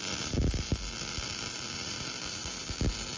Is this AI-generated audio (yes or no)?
no